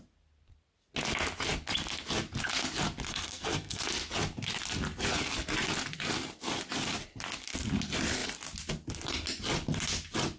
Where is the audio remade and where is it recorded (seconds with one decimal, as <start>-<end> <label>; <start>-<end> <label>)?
0.0-3.1 recorded; 3.1-3.8 remade; 3.8-10.4 recorded